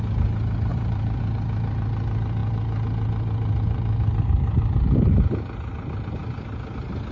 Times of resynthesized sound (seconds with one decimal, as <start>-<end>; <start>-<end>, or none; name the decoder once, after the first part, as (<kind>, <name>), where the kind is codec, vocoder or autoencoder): 0.7-1.2 (vocoder, BigVGAN v2)